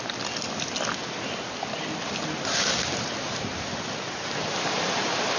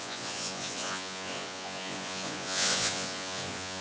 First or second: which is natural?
first